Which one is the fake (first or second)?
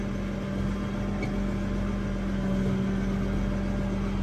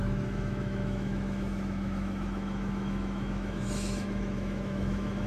second